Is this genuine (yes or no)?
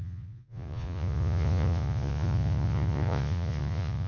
no